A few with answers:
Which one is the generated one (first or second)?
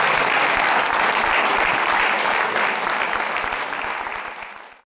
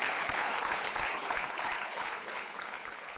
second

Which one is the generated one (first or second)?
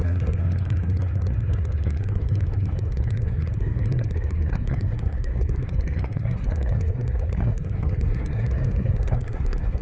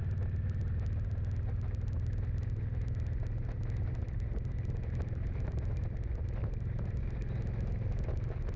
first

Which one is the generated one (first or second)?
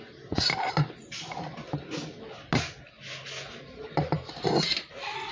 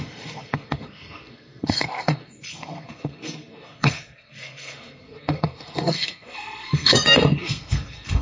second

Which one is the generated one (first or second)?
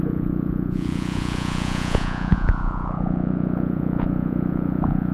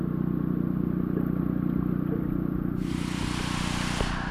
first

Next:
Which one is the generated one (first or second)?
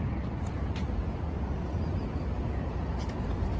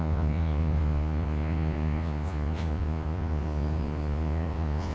second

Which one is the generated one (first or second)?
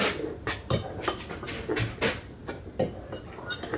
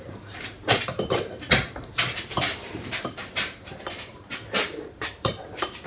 second